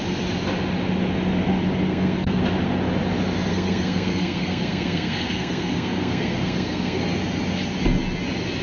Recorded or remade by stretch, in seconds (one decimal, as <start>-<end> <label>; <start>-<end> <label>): 0.0-1.9 recorded; 1.9-2.4 remade; 2.4-3.5 recorded; 3.5-7.0 remade; 7.0-8.6 recorded

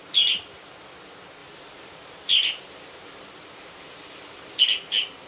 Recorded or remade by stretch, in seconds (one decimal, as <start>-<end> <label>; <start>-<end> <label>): 0.0-1.4 recorded; 1.4-4.6 remade; 4.6-5.3 recorded

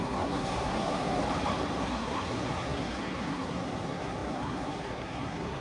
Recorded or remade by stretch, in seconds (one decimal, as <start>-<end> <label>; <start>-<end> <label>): 0.0-1.2 remade; 1.2-1.8 recorded; 1.8-5.6 remade